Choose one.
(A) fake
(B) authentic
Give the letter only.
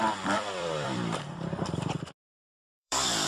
A